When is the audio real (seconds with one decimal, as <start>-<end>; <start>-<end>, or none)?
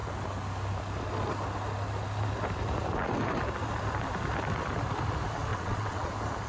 0.0-5.5; 6.1-6.5